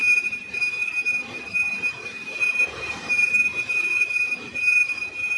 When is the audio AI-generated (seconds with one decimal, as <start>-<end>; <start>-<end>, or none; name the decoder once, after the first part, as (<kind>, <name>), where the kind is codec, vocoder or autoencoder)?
0.0-5.4 (vocoder, BigVGAN v2)